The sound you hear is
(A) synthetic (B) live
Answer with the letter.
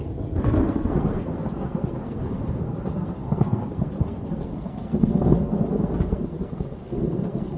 A